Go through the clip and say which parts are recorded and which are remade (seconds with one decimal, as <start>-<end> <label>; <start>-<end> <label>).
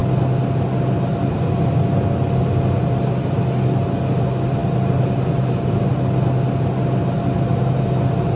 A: 0.0-8.4 recorded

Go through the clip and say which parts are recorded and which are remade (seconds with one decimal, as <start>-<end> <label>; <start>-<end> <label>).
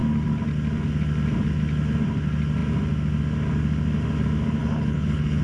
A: 0.0-4.6 recorded; 4.6-5.4 remade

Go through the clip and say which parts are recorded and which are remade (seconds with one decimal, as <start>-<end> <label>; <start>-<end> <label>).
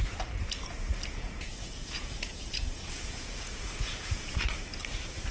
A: 0.0-1.1 recorded; 1.1-4.3 remade; 4.3-5.3 recorded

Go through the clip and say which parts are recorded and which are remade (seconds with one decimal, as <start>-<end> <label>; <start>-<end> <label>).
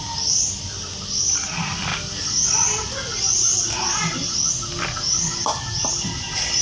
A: 0.0-6.6 recorded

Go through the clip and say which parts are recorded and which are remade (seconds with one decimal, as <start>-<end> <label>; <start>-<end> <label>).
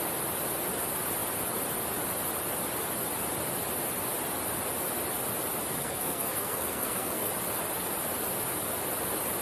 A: 0.0-5.7 recorded; 5.7-7.3 remade; 7.3-9.4 recorded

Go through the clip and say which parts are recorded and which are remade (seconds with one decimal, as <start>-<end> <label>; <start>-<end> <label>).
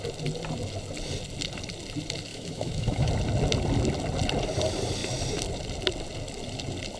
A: 0.0-2.3 recorded; 2.3-3.1 remade; 3.1-7.0 recorded